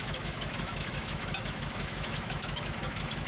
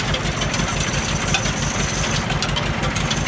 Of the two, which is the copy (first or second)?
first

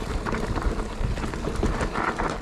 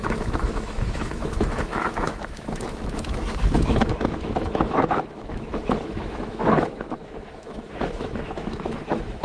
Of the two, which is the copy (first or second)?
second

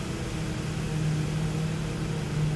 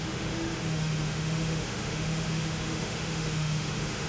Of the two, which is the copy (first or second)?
second